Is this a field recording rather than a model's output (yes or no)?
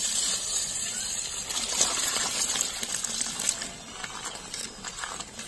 yes